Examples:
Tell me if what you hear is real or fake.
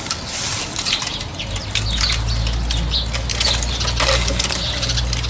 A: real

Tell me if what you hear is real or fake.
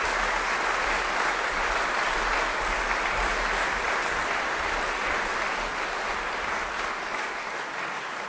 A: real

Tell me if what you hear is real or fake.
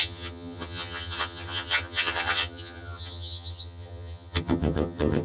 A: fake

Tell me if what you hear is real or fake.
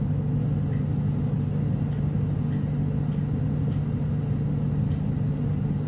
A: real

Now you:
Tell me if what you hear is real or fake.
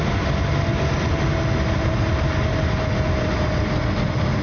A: real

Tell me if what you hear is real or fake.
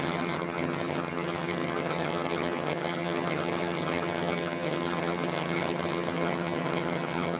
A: fake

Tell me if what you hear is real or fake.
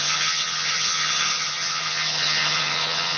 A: fake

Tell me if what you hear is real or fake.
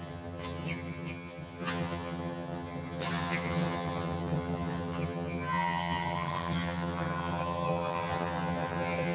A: fake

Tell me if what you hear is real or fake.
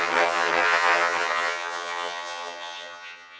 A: fake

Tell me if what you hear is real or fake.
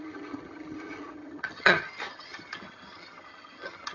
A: fake